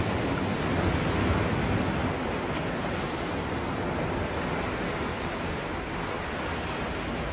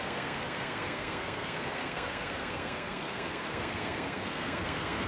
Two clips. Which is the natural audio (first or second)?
first